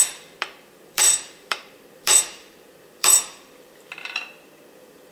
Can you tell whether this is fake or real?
fake